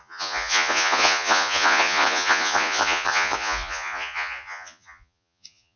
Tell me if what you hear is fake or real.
fake